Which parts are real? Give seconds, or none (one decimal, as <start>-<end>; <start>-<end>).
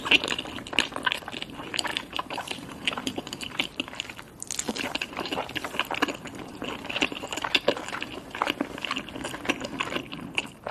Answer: 0.0-1.9; 4.0-10.7